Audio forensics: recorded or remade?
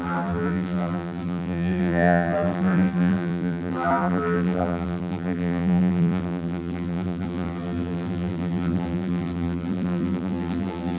remade